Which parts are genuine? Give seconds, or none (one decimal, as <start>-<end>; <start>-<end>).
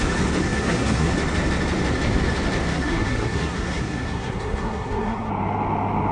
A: 0.0-0.4; 1.1-2.7; 5.3-6.1